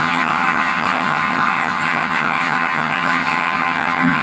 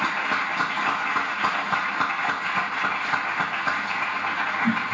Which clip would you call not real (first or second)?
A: first